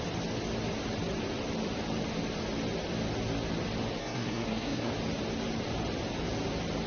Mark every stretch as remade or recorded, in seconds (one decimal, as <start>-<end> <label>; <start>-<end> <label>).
0.0-4.0 recorded; 4.0-4.9 remade; 4.9-6.9 recorded